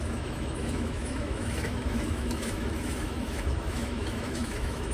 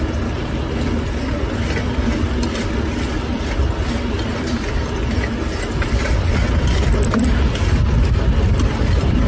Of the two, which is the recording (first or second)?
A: second